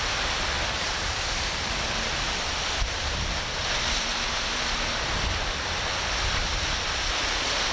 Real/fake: fake